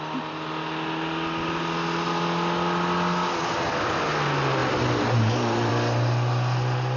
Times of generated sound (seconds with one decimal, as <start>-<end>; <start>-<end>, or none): none